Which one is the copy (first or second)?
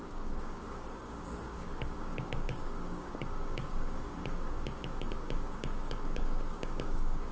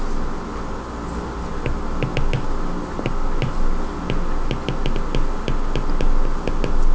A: first